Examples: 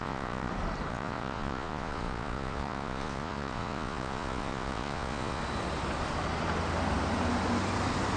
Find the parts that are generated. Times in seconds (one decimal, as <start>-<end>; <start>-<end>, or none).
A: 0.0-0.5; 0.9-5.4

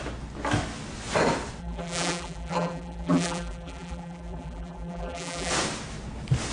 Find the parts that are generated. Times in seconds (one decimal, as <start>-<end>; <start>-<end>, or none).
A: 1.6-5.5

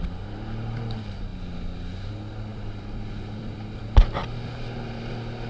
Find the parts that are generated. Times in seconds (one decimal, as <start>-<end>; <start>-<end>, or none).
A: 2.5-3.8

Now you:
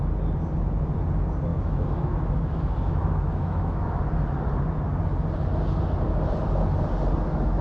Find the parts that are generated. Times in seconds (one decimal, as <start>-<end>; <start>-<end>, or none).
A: 1.5-4.0

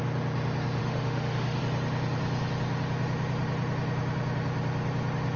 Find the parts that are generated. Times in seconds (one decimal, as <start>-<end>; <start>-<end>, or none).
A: 0.8-1.6

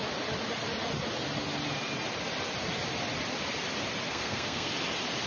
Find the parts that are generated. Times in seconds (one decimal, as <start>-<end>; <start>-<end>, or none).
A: 4.1-4.7